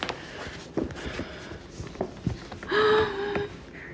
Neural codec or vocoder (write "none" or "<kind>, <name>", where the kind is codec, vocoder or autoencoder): none